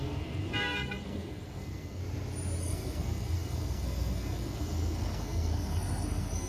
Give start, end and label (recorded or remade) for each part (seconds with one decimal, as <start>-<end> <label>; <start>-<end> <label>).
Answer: 0.0-2.0 remade; 2.0-2.6 recorded; 2.6-6.5 remade

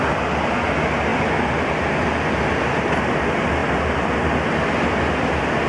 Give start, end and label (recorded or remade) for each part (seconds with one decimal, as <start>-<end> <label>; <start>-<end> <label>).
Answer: 0.0-5.7 recorded